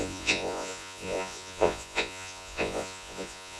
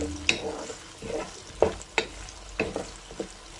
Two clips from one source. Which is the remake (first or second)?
first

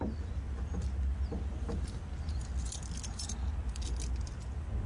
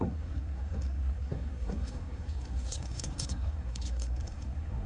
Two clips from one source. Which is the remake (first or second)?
second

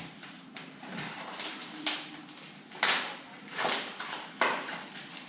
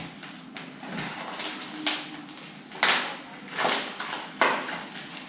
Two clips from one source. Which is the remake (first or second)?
first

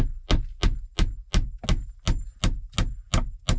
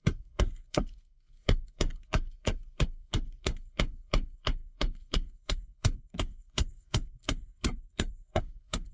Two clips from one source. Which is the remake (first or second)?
second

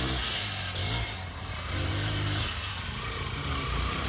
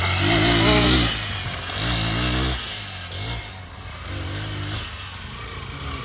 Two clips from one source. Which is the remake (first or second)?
first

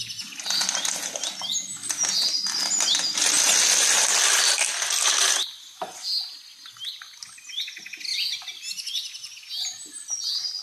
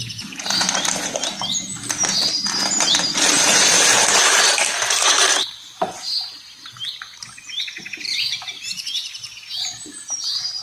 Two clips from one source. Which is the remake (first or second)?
second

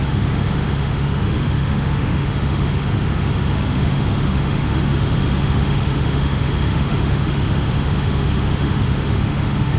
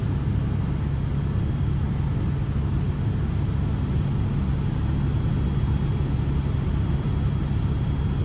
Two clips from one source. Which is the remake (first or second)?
first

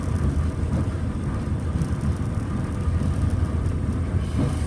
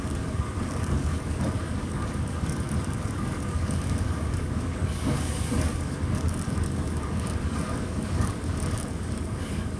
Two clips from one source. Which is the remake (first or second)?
second